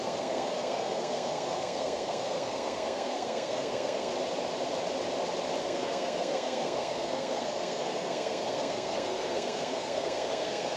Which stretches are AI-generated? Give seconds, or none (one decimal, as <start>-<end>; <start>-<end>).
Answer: 0.0-4.1; 5.6-10.8